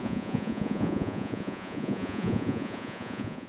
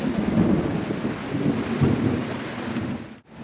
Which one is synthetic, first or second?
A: first